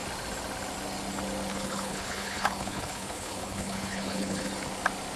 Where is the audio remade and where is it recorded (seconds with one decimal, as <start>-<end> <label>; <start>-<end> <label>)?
0.0-1.5 recorded; 1.5-4.5 remade; 4.5-5.2 recorded